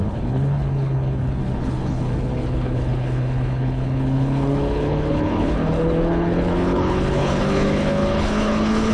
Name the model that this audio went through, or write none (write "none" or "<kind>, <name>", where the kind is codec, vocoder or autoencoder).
codec, HILCodec